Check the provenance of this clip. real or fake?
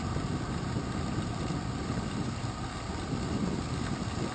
real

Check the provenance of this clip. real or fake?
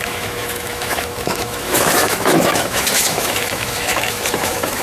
fake